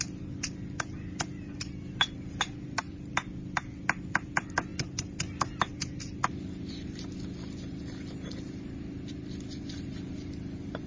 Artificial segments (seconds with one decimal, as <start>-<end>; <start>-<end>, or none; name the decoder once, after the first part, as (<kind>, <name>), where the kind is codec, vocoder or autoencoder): none